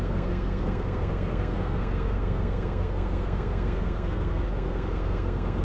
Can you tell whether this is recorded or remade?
remade